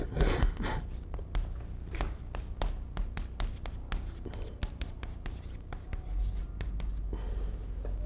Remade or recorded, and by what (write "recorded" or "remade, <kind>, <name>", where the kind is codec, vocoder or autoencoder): recorded